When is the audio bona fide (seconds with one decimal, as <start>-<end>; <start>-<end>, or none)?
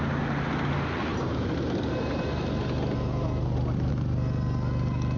0.0-5.2